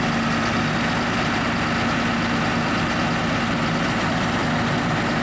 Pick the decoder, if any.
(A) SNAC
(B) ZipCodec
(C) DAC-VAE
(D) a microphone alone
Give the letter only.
D